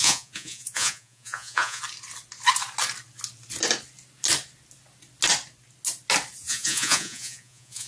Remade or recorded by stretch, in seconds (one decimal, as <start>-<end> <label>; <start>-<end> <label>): 0.0-1.8 remade; 1.8-6.4 recorded; 6.4-7.9 remade